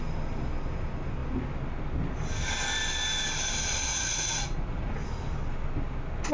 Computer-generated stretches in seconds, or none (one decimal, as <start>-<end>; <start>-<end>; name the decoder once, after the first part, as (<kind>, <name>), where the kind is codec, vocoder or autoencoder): 3.9-4.9 (vocoder, Vocos)